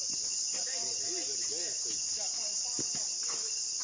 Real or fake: fake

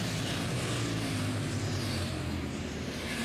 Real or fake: fake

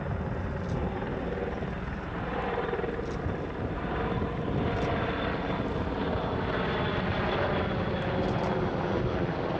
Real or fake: real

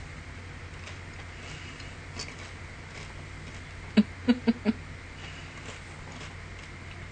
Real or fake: real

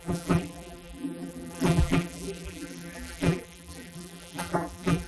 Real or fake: fake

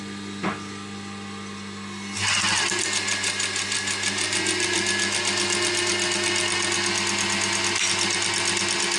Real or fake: real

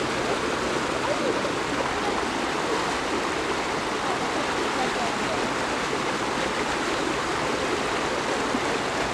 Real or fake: real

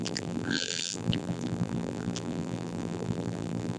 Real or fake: fake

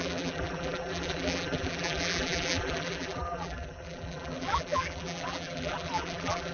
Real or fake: fake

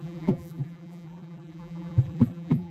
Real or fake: fake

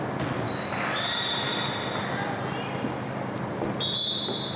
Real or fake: real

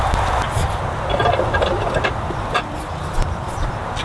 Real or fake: real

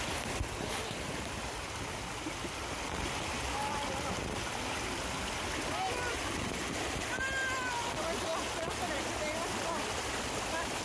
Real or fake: real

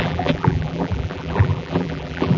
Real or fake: fake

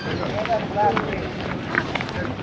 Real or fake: fake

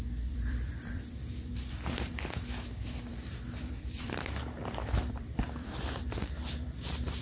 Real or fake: fake